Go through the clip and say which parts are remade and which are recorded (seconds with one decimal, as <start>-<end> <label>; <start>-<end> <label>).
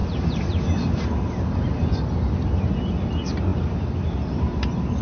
0.0-5.0 recorded